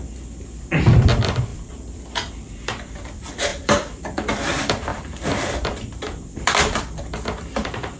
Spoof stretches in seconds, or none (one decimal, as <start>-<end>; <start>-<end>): 0.0-8.0